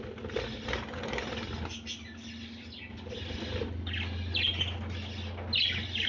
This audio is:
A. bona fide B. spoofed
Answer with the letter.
A